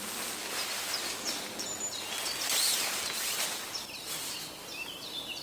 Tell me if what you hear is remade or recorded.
recorded